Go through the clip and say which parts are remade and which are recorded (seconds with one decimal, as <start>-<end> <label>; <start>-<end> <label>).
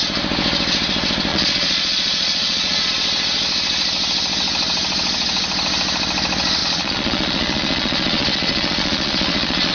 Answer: 0.0-1.3 recorded; 1.3-2.9 remade; 2.9-6.6 recorded; 6.6-9.7 remade